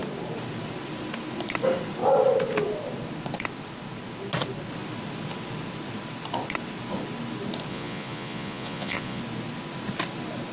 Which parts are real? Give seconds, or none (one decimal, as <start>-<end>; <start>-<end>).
0.0-7.7; 9.2-10.5